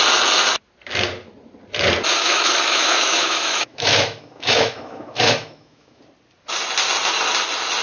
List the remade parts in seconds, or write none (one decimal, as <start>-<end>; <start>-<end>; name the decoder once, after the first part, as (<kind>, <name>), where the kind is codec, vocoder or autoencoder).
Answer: 2.1-6.0 (autoencoder, DAC-VAE)